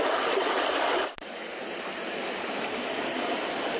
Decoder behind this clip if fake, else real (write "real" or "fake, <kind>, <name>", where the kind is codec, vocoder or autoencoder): real